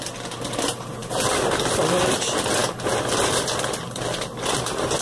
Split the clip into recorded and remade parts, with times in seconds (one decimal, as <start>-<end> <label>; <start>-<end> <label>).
0.0-5.0 recorded